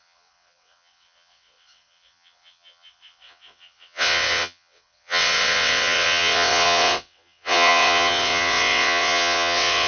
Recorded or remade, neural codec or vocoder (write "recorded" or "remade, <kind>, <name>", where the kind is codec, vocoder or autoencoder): remade, vocoder, WaveNeXt